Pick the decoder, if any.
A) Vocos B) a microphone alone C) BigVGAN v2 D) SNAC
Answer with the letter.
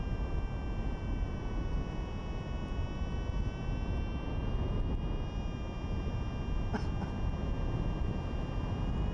B